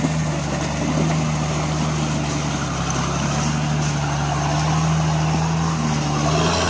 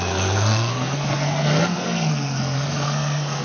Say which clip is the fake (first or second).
second